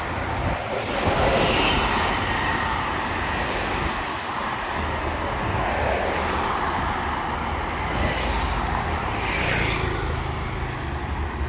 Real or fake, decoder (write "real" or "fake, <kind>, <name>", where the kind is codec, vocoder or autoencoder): real